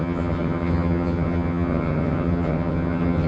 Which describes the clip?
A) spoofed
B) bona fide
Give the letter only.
A